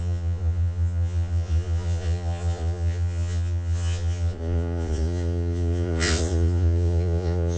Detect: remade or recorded remade